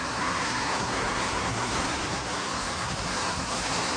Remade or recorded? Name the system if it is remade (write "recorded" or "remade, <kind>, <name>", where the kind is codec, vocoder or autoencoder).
remade, codec, SNAC